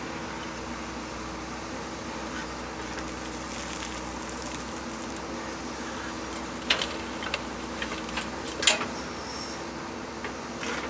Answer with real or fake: real